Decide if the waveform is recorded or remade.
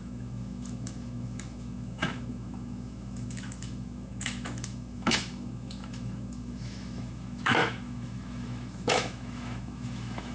remade